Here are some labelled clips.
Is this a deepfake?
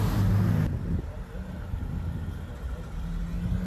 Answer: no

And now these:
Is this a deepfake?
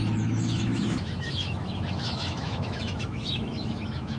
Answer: yes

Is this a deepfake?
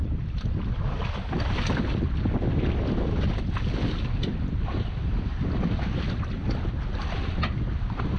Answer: no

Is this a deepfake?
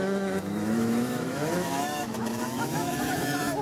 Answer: yes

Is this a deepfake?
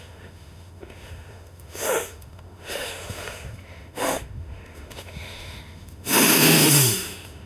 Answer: yes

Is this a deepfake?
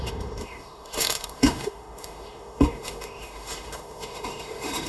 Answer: yes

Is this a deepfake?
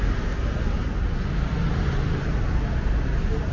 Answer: no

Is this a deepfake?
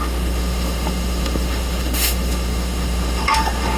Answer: yes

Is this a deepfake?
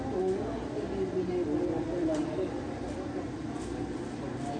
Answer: no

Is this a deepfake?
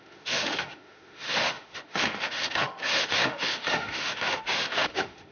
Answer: yes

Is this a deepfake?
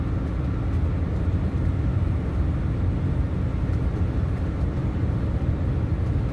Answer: no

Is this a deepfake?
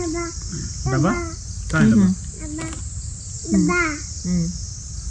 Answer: no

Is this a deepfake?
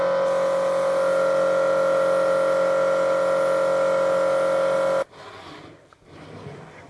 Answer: no